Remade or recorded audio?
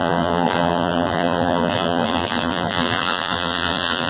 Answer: remade